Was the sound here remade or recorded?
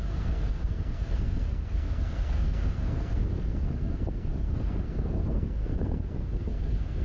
remade